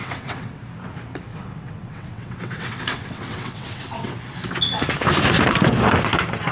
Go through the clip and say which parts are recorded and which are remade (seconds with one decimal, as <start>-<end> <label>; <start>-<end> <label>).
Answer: 0.0-0.6 remade; 0.6-1.3 recorded; 1.3-4.1 remade; 4.1-6.5 recorded